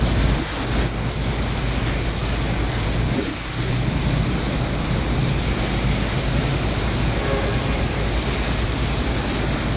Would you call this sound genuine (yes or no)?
yes